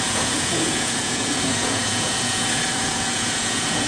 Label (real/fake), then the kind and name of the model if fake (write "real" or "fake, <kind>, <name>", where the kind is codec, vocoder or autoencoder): fake, vocoder, Vocos